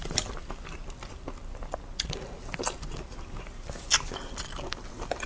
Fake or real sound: real